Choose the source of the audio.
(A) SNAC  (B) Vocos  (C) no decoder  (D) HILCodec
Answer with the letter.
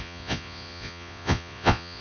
B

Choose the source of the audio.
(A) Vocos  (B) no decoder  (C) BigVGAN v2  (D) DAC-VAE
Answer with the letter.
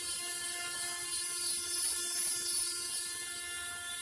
B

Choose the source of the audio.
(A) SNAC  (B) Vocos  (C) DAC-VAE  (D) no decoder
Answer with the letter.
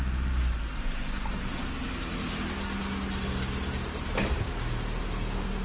D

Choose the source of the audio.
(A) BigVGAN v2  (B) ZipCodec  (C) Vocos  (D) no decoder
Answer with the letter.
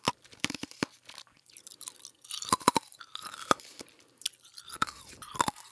D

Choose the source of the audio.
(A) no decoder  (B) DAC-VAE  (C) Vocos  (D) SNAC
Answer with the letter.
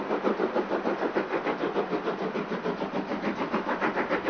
A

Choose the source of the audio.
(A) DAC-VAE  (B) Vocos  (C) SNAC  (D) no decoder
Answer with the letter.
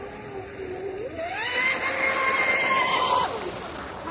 D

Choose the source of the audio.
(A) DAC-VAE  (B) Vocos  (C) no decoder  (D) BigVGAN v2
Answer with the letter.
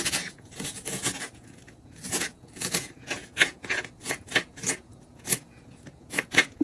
B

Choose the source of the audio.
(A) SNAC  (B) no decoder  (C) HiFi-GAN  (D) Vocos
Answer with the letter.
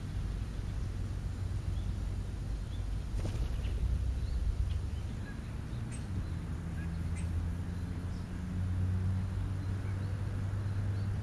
B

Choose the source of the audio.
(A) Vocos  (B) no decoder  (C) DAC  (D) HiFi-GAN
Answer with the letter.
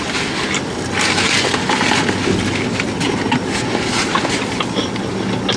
B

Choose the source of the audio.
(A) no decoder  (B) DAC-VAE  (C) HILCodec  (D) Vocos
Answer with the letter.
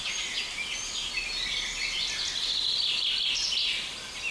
A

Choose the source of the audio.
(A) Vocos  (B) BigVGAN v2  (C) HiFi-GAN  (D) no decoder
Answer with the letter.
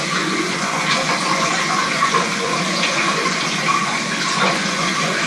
A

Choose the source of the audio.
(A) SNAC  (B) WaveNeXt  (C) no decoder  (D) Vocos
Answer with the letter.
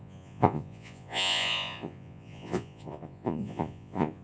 D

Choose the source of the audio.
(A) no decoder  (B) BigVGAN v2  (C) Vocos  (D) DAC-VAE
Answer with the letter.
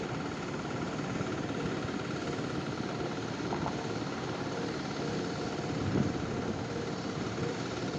A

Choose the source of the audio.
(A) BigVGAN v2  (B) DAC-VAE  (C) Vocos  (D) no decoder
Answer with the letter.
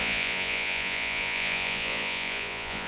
C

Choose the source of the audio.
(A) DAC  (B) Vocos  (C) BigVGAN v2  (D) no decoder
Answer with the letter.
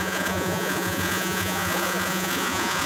B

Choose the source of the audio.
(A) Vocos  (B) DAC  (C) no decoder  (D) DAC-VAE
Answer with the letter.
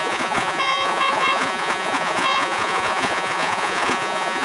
A